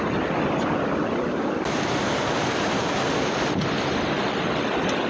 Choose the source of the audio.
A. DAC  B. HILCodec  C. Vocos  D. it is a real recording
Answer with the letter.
D